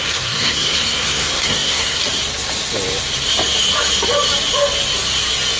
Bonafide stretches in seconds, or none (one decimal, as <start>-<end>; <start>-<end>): 2.0-5.6